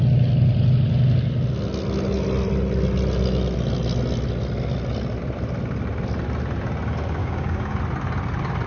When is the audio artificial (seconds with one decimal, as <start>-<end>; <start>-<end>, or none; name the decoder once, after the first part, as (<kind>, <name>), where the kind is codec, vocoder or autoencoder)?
7.2-7.8 (codec, DAC)